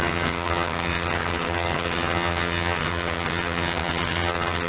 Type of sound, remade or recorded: remade